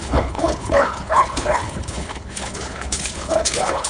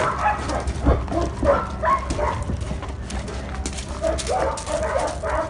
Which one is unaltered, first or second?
second